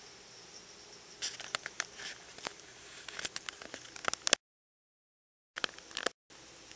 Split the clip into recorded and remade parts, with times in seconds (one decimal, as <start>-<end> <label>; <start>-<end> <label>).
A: 0.0-2.3 recorded; 2.3-3.7 remade; 3.7-6.8 recorded